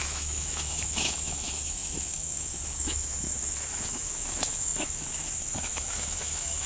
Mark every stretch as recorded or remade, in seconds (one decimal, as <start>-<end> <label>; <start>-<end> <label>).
0.0-6.7 remade